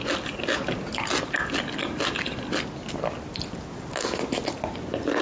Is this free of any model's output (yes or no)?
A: yes